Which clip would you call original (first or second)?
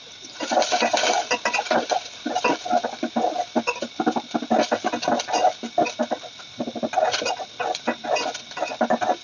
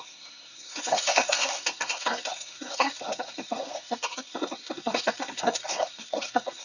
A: first